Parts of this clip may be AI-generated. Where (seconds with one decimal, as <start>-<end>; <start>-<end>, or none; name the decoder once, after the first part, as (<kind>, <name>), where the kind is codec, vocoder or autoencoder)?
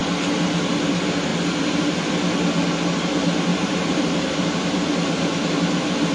3.5-5.3 (vocoder, BigVGAN v2)